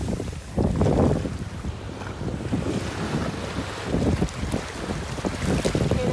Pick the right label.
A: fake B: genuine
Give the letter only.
B